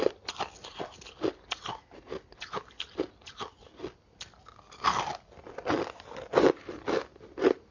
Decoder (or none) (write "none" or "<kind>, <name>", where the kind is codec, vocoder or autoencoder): none